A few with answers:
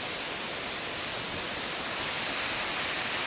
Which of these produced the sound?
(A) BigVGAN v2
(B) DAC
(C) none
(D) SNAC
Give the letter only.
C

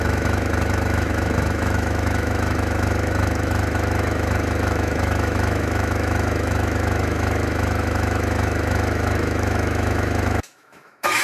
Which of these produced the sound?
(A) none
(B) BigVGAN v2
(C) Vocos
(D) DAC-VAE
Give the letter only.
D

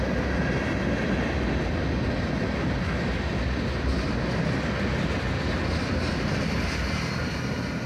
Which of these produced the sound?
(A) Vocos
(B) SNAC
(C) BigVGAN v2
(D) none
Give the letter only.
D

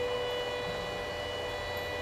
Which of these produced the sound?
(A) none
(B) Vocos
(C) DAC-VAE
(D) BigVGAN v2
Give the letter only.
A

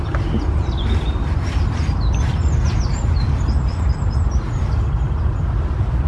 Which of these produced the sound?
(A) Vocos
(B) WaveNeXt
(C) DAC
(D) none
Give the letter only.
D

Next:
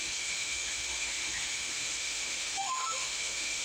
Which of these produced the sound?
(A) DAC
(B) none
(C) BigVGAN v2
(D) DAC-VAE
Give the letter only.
D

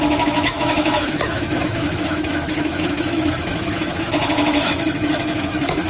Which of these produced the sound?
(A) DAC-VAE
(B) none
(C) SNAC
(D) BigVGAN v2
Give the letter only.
A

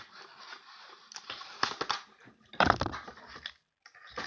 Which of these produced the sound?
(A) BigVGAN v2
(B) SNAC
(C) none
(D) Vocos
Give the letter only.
C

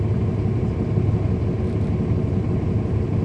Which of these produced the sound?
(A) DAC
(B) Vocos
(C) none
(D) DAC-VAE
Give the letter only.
C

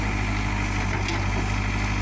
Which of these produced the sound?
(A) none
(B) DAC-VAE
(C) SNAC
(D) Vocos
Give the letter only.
A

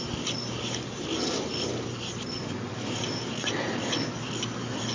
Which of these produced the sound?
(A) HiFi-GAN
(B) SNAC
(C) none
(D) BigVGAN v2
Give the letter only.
C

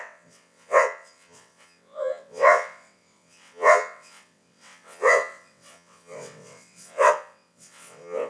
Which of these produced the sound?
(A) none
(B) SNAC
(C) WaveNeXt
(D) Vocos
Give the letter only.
C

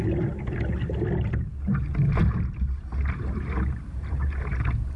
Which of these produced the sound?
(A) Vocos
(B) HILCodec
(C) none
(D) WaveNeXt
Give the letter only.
C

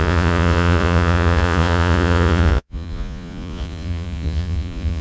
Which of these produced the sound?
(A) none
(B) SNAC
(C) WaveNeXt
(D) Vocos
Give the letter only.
D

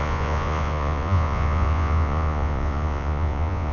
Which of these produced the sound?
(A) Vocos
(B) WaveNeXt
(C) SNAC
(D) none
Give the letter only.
A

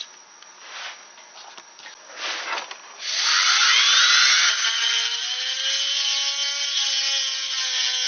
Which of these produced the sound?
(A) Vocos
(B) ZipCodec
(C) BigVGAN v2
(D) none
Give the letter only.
D